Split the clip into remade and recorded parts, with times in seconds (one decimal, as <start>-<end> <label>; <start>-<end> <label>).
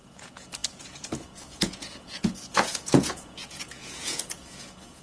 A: 0.0-5.0 remade